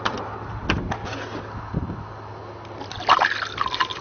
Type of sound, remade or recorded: recorded